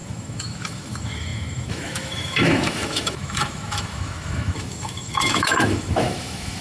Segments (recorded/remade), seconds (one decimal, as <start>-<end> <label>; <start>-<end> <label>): 0.0-6.6 remade